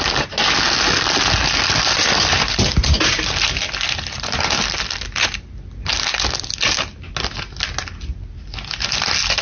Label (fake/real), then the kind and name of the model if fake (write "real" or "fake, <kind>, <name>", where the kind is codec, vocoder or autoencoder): real